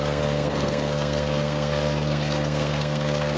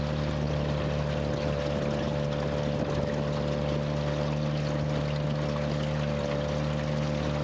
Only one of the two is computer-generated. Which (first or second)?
first